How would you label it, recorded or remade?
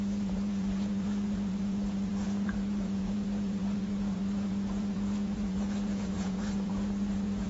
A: remade